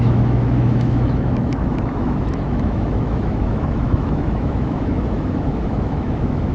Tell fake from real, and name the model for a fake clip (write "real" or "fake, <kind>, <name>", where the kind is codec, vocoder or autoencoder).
fake, autoencoder, DAC-VAE